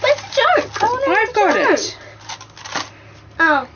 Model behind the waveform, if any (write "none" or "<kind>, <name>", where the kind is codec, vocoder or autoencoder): none